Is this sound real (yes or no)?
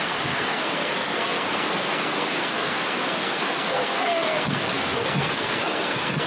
no